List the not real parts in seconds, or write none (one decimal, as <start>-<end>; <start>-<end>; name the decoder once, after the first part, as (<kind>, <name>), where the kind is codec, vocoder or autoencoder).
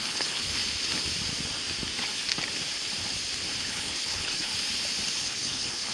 0.0-0.6 (codec, HILCodec); 3.6-4.5; 5.2-5.9